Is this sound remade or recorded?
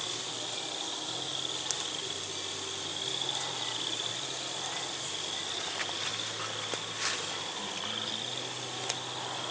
recorded